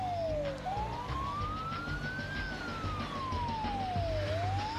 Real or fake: real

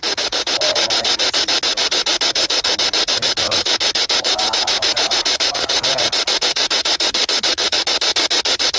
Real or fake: fake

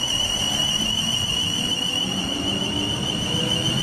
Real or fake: real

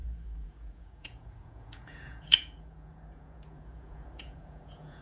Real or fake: fake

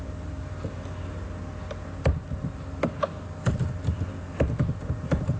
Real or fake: real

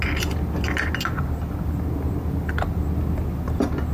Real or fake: real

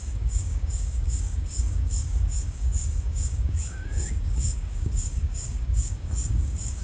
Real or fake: fake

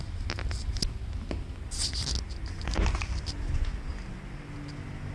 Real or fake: real